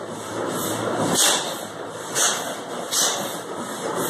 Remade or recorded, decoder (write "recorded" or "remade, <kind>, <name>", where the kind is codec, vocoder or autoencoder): remade, vocoder, BigVGAN v2